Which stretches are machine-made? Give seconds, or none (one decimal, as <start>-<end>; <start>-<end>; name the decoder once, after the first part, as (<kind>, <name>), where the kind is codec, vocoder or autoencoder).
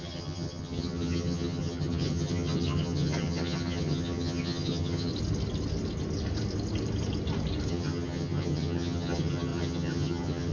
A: 0.0-5.1 (vocoder, HiFi-GAN); 7.7-10.5